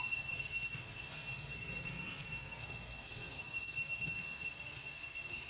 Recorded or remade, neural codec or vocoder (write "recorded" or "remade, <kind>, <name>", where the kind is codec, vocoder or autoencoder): remade, codec, SNAC